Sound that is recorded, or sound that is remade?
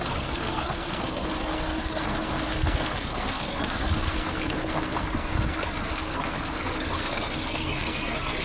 remade